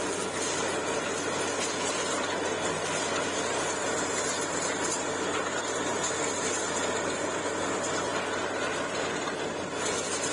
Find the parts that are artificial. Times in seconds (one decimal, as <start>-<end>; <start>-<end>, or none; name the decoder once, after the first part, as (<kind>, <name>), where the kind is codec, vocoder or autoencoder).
none